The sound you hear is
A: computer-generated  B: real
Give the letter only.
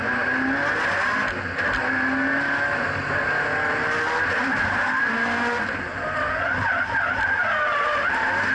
B